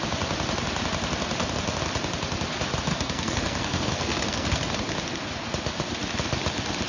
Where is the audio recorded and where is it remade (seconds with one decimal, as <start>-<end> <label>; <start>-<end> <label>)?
0.0-2.9 recorded; 2.9-4.6 remade; 4.6-6.9 recorded